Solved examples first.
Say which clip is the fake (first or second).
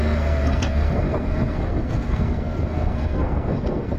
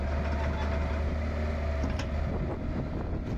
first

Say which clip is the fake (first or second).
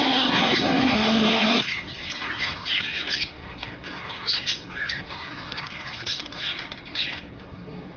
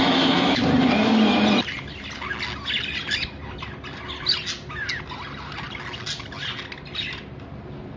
first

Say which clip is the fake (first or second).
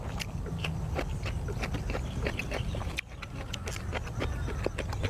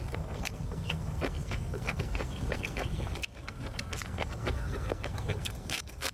second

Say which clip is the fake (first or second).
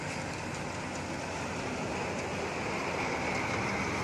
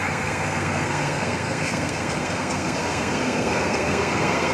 second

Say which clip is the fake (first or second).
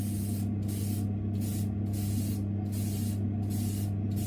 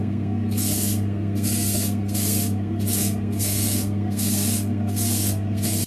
second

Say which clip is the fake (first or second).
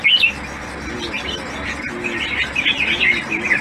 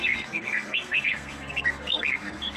second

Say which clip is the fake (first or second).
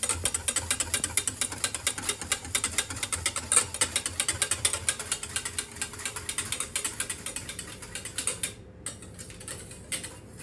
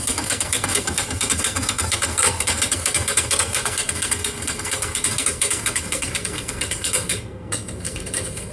second